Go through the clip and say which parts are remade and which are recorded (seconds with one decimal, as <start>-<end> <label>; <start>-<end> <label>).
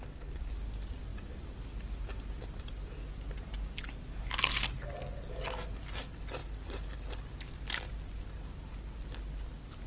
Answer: 0.0-9.9 recorded